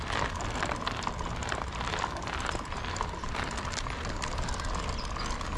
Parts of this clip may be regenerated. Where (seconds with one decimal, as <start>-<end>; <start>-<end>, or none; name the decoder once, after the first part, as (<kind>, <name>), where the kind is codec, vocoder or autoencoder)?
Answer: 1.4-4.8 (vocoder, BigVGAN v2)